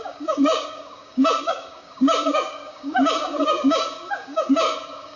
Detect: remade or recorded remade